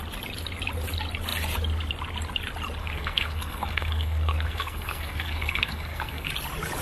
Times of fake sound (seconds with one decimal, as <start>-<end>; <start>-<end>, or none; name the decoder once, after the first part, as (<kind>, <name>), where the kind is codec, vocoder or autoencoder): 2.8-6.3 (codec, SNAC)